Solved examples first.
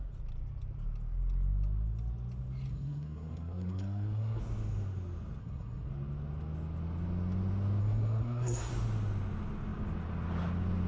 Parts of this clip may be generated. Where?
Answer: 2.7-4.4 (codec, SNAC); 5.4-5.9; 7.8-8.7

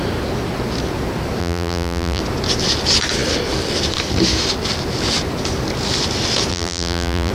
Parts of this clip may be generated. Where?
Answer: 1.4-2.2 (vocoder, BigVGAN v2); 6.5-7.3

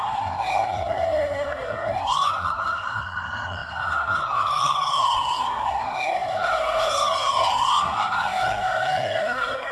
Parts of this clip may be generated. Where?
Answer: 0.0-9.7 (codec, SNAC)

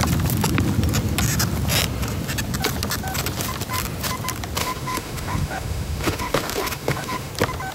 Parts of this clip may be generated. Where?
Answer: 4.6-7.3 (autoencoder, DAC-VAE)

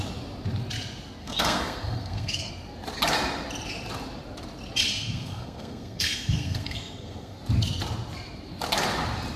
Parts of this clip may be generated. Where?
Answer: 1.2-2.5 (codec, SNAC); 4.9-7.4

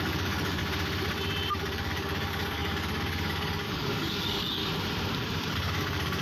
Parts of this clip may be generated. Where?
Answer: 0.0-0.6 (codec, DAC); 1.5-4.6; 5.5-6.2

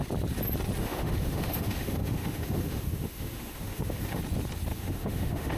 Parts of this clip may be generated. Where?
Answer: 0.8-4.2 (autoencoder, DAC-VAE); 4.7-5.6